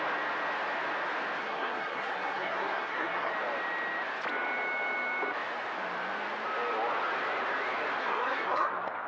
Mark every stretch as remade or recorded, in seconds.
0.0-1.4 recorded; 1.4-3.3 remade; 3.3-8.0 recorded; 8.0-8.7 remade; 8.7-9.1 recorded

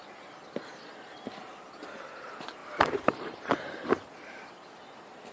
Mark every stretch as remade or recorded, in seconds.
0.0-2.6 recorded; 2.6-4.7 remade; 4.7-5.3 recorded